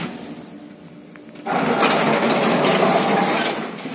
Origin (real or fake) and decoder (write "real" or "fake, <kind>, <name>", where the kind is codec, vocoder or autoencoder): real